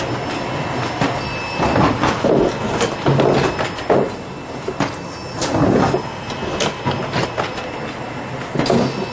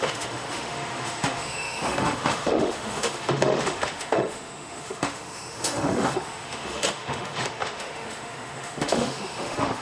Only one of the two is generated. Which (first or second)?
second